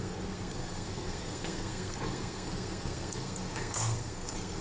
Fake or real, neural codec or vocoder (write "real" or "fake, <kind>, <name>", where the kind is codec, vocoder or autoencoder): fake, codec, SNAC